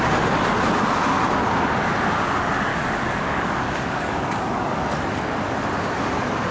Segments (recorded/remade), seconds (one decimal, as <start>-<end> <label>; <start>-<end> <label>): 0.0-2.7 recorded; 2.7-4.8 remade; 4.8-6.5 recorded